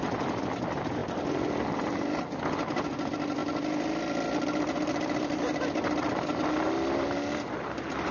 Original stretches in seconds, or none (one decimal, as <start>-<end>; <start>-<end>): 0.0-8.1